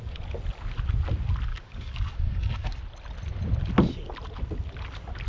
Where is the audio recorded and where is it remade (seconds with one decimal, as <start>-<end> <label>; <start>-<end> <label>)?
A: 0.0-1.5 recorded; 1.5-2.8 remade; 2.8-5.3 recorded